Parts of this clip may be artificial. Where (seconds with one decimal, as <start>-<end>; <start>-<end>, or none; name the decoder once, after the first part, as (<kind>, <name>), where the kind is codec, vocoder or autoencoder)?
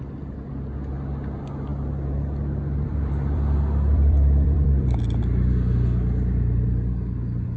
1.7-5.2 (vocoder, BigVGAN v2)